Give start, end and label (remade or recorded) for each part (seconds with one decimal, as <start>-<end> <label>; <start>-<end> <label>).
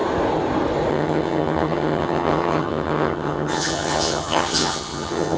0.0-0.9 recorded; 0.9-5.4 remade